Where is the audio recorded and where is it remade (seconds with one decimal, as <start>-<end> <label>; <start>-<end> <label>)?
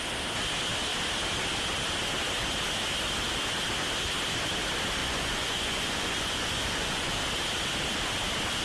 0.0-5.0 recorded; 5.0-7.1 remade; 7.1-8.6 recorded